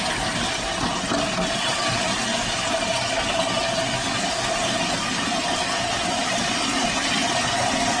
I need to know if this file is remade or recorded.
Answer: recorded